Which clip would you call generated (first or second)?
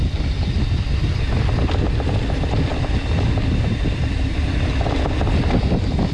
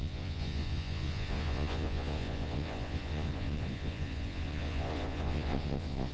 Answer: second